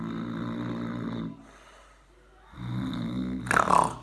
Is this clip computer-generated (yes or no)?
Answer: no